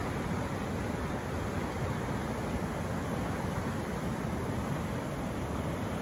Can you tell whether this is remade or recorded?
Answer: recorded